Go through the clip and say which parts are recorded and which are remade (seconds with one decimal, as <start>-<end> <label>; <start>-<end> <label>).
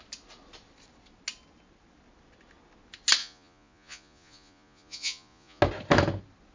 0.0-3.2 recorded; 3.2-5.6 remade; 5.6-6.5 recorded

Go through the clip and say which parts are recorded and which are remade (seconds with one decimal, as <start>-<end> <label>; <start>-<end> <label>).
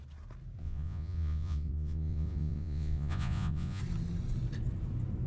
0.0-0.6 recorded; 0.6-3.8 remade; 3.8-5.3 recorded